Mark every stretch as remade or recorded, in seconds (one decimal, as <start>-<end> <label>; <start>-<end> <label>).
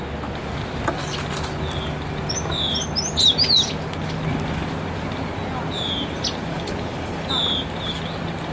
0.0-6.5 recorded; 6.5-7.3 remade; 7.3-8.5 recorded